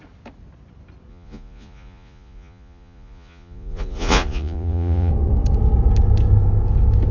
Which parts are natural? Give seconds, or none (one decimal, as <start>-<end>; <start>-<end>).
0.0-1.1; 5.1-7.1